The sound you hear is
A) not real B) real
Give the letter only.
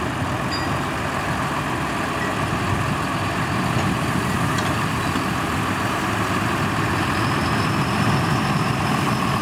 B